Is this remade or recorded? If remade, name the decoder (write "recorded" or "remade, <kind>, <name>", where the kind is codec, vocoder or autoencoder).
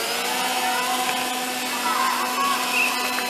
recorded